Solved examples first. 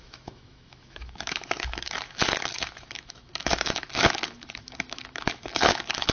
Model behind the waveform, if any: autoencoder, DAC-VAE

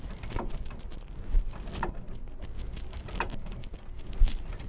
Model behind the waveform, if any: none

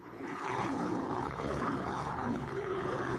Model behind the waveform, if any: codec, HILCodec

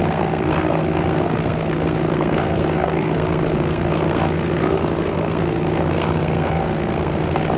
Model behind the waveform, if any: codec, SNAC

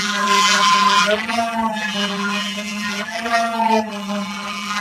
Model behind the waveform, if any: vocoder, BigVGAN v2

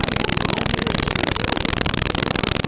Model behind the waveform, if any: none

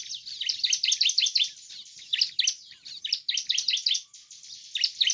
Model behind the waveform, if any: none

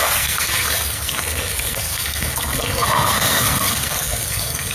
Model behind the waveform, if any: codec, SNAC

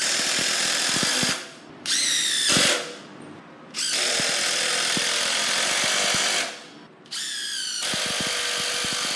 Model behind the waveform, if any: none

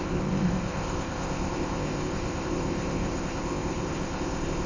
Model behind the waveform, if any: codec, ZipCodec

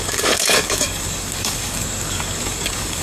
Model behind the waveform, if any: codec, DAC